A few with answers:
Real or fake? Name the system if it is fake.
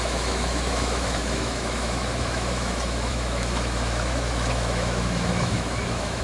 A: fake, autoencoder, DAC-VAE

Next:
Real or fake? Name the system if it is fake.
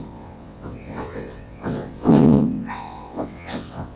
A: fake, vocoder, WaveNeXt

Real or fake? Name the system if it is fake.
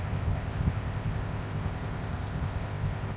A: fake, codec, ZipCodec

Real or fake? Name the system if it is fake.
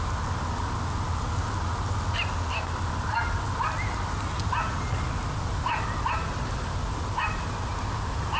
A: real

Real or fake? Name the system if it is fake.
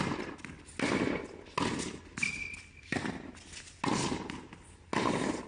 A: real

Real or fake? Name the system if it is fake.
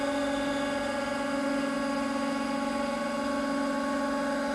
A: real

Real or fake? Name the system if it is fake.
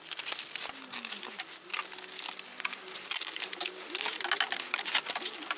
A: real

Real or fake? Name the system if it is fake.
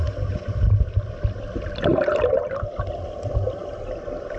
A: real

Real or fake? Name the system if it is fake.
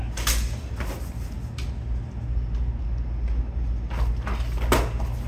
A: real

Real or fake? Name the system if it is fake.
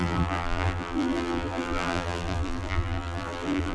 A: fake, vocoder, BigVGAN v2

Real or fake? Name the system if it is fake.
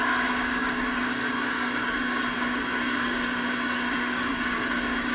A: fake, codec, DAC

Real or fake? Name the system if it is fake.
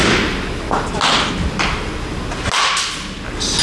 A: real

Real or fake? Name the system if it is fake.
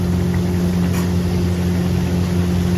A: real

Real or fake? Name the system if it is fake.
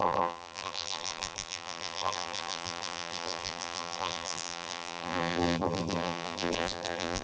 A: fake, vocoder, BigVGAN v2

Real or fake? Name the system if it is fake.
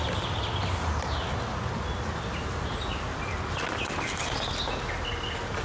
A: real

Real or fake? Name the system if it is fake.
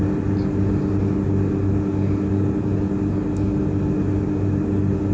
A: real